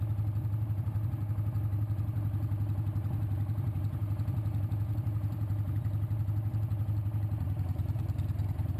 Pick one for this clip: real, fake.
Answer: fake